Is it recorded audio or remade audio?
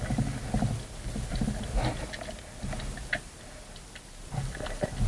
recorded